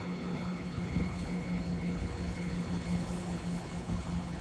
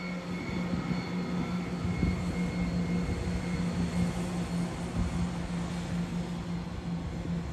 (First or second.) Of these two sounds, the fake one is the first